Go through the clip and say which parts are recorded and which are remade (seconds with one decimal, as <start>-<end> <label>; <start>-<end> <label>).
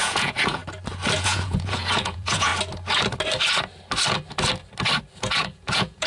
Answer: 0.0-0.6 remade; 0.6-1.2 recorded; 1.2-2.5 remade; 2.5-5.2 recorded; 5.2-6.1 remade